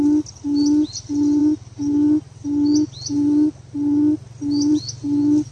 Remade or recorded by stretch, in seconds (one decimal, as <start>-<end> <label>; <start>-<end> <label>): 0.0-5.5 recorded